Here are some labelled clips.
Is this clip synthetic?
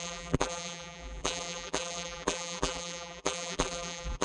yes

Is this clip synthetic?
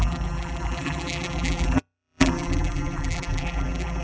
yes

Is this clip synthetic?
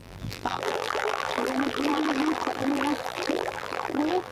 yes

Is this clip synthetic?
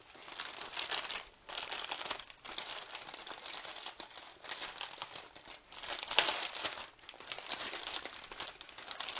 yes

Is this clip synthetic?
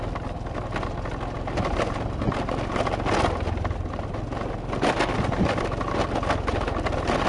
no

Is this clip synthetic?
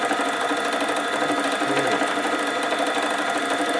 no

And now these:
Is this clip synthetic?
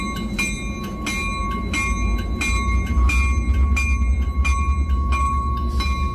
no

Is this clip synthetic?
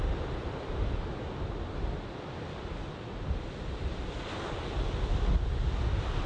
no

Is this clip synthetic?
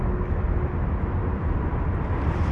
no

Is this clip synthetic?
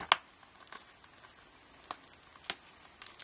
no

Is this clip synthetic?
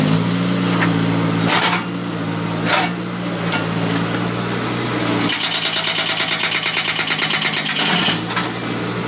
no